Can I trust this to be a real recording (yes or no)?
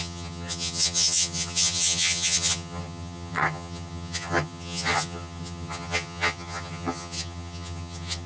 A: no